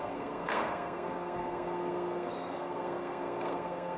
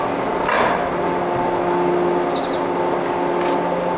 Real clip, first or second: second